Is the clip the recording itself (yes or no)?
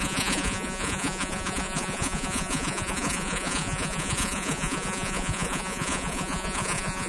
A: no